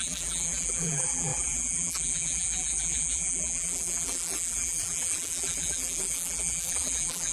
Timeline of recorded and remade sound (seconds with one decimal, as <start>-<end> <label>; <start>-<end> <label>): 0.0-7.3 remade